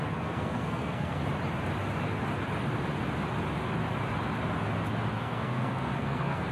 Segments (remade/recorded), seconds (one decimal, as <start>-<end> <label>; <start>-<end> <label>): 0.0-1.2 remade; 1.2-5.1 recorded; 5.1-6.5 remade